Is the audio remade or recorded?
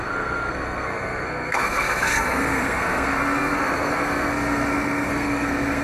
remade